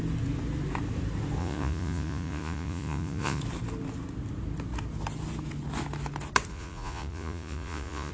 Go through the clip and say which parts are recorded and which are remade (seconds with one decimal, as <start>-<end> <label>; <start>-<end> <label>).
0.0-1.4 recorded; 1.4-3.4 remade; 3.4-6.5 recorded; 6.5-8.1 remade